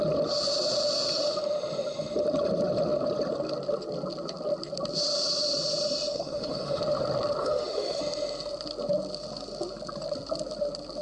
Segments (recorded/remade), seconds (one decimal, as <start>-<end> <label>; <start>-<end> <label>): 0.0-6.1 recorded; 6.1-6.8 remade; 6.8-7.4 recorded; 7.4-8.0 remade; 8.0-11.0 recorded